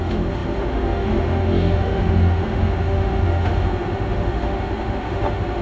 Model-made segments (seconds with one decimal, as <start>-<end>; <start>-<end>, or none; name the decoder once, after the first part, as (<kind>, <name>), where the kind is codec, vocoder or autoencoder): 0.0-5.6 (autoencoder, DAC-VAE)